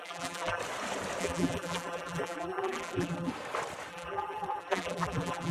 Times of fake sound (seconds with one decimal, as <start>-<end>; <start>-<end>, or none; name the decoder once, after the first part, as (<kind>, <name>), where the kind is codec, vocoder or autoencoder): 0.0-0.6 (vocoder, BigVGAN v2); 1.2-3.3; 3.9-5.5